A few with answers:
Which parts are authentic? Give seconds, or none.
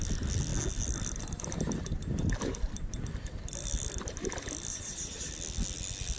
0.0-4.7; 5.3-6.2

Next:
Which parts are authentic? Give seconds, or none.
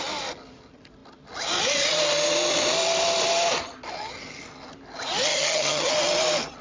0.0-5.3; 5.9-6.6